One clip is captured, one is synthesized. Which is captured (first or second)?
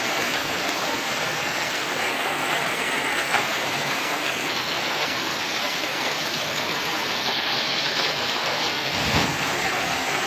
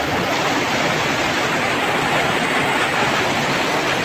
second